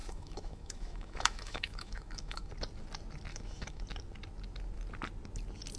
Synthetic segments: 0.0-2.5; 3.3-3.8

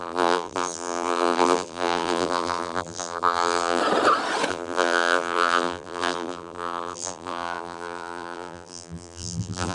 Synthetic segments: 0.0-3.8; 4.5-9.7

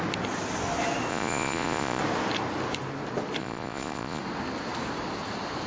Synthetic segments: 1.1-2.0; 3.4-4.2

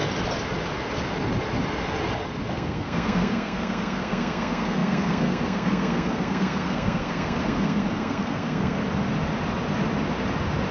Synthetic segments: 2.5-8.8

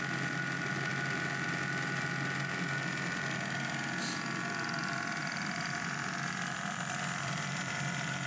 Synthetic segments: 5.2-7.6

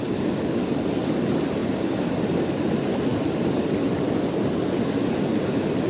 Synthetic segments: none

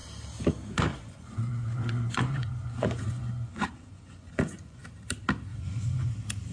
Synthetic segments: 0.9-4.8; 5.5-6.1